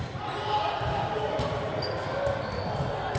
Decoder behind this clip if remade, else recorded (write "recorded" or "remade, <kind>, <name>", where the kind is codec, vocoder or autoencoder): recorded